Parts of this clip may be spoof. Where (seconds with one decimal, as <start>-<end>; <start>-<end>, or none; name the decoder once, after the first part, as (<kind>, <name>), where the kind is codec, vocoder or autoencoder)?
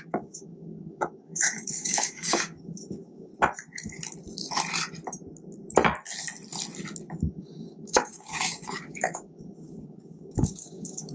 0.0-3.3 (codec, DAC); 7.1-11.1